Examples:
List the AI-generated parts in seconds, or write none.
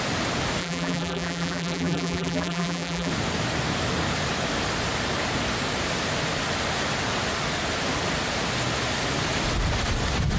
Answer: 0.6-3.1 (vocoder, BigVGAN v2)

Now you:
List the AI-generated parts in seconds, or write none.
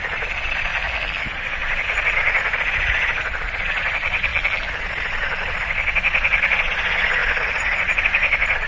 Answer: 0.0-0.7 (vocoder, Vocos); 1.2-4.3; 4.8-8.7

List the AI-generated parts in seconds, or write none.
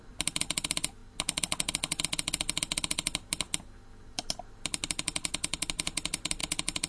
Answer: none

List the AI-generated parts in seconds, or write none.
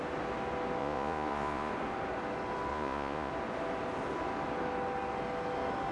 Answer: 0.8-1.7 (vocoder, Vocos); 2.7-3.3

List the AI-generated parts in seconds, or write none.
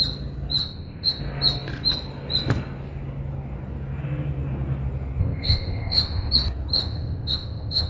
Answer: 0.6-1.2 (codec, ZipCodec); 5.2-6.3; 6.7-7.9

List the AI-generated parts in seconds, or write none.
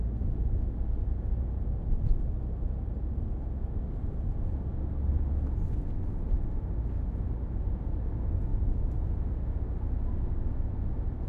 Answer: none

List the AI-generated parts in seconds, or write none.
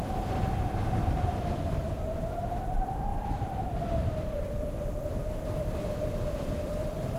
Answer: 0.4-2.0 (vocoder, BigVGAN v2); 3.1-3.7; 5.2-6.7